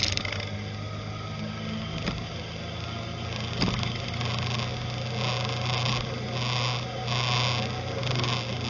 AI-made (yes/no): no